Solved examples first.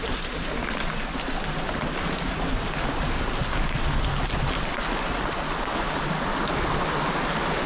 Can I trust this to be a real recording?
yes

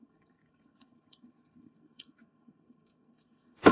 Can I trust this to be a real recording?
no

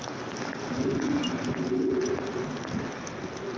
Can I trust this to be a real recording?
yes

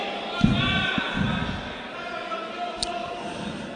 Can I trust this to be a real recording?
yes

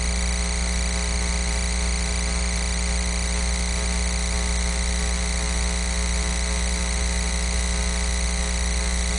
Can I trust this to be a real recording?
yes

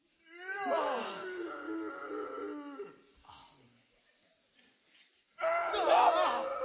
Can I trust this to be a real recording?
yes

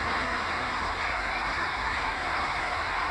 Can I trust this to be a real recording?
no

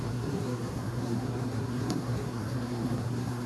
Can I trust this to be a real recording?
no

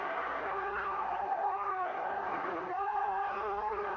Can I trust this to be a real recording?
no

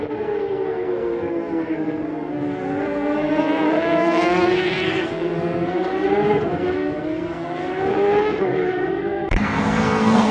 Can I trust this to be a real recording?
no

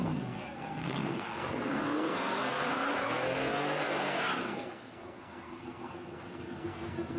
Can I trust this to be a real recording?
no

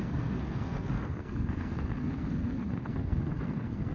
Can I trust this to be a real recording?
no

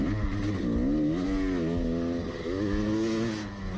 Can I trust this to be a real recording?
yes